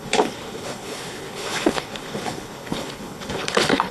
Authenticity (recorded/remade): remade